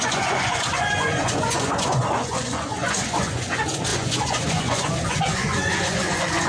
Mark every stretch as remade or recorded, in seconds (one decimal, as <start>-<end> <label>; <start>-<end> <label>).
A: 0.0-6.5 remade

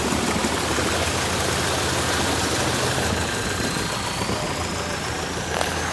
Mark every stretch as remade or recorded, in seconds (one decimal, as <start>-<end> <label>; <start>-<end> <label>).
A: 0.0-5.9 recorded